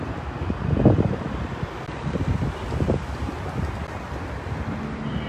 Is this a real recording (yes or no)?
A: yes